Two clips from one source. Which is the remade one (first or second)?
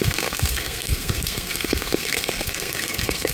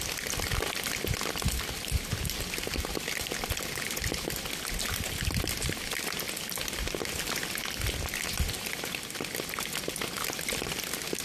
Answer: first